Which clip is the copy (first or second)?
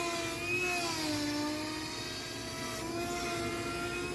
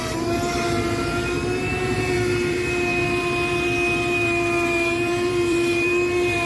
second